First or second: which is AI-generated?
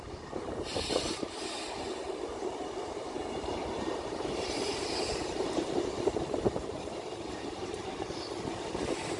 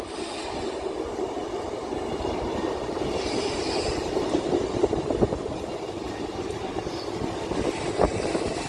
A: first